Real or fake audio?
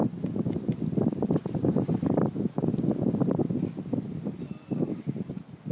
real